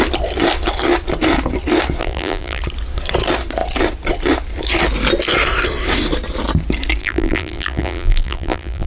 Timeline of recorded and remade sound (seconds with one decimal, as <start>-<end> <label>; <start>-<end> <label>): 0.0-2.0 recorded; 2.0-2.6 remade; 2.6-7.0 recorded; 7.0-8.9 remade

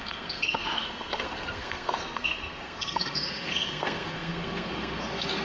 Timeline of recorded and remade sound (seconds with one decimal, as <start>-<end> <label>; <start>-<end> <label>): 0.0-5.4 remade